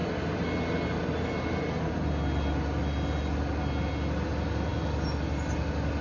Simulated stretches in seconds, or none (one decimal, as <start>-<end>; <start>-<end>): none